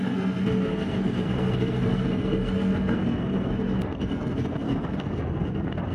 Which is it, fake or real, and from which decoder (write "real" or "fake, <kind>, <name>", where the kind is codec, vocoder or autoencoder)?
fake, codec, SNAC